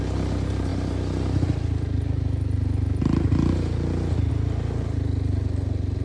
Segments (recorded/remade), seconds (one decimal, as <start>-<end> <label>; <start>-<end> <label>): 0.0-6.0 recorded